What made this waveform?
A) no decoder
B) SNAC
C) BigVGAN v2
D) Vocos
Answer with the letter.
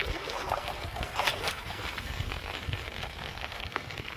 B